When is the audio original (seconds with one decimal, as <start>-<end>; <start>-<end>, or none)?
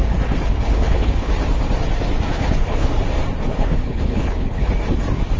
0.0-0.5; 1.3-2.3; 2.9-3.5; 4.7-5.4